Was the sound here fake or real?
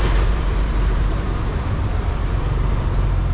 fake